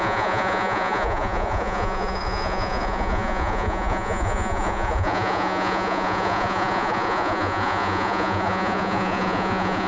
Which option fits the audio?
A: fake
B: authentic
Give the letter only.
A